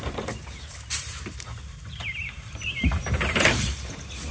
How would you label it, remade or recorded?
remade